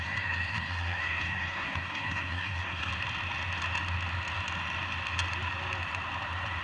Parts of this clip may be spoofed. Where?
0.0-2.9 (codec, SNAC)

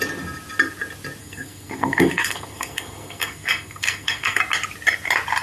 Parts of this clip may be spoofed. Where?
1.2-4.4 (codec, SNAC)

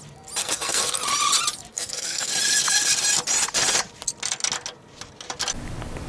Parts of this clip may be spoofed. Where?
0.4-1.0 (codec, SNAC); 1.7-2.3

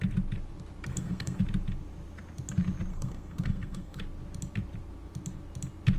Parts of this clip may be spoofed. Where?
0.9-1.4 (codec, SNAC); 2.9-4.0

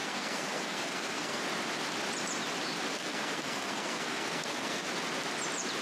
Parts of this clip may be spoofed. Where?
0.0-1.4 (codec, SNAC); 2.9-4.9

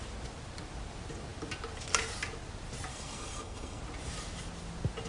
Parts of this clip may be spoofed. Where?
2.9-3.8 (codec, SNAC)

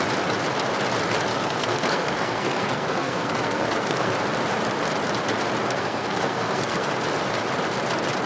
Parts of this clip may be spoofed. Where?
1.3-4.1 (codec, SNAC); 5.6-6.9

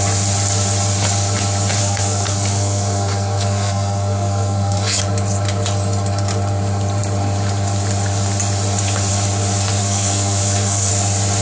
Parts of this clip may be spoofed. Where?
1.8-5.0 (codec, SNAC); 9.8-10.9